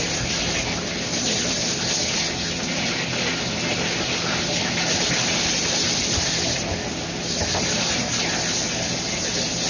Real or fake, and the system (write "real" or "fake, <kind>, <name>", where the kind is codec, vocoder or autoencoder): real